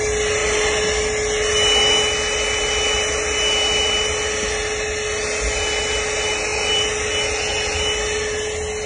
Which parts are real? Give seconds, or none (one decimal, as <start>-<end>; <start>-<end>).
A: 0.0-8.9